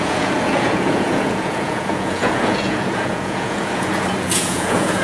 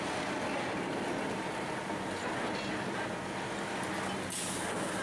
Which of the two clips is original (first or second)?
second